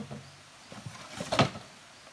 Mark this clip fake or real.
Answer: real